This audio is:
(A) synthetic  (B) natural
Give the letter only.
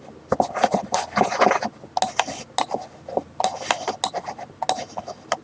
B